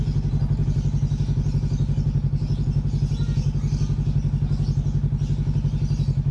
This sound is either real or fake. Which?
real